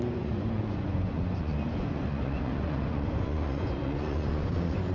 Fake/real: fake